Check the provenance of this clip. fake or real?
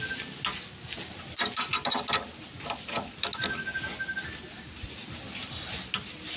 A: real